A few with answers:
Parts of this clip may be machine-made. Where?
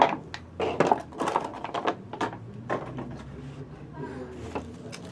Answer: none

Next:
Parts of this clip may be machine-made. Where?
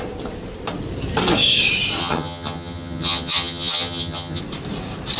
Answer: 2.0-4.4 (vocoder, HiFi-GAN)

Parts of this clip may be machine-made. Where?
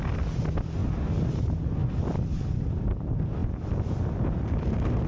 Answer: none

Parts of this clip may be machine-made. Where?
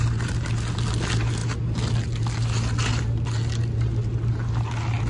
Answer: none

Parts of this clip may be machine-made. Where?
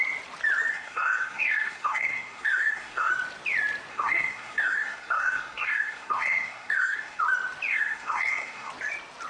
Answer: 0.7-3.1 (codec, SNAC); 3.9-7.2; 7.7-8.7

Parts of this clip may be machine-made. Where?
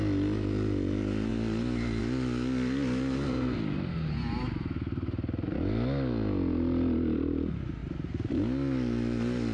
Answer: 1.3-2.0 (vocoder, BigVGAN v2); 7.8-8.3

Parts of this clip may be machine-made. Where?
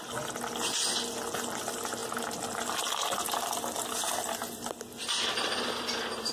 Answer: none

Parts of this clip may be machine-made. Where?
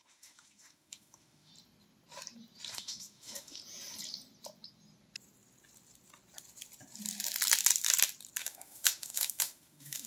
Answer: 0.0-1.5 (autoencoder, DAC-VAE); 2.7-3.6; 8.4-10.1